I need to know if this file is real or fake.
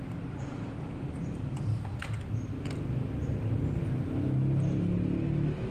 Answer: real